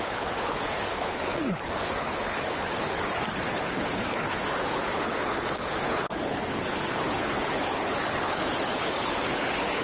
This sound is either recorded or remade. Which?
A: remade